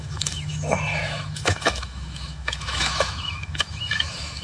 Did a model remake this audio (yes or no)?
yes